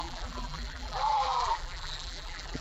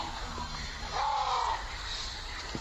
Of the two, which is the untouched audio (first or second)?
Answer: second